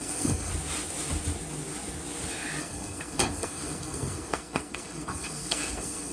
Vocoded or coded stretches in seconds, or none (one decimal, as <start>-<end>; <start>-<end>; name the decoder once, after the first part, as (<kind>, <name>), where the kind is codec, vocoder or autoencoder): 0.0-0.5 (codec, SNAC); 2.6-6.1